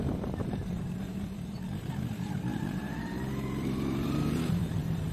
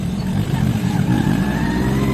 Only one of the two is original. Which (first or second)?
second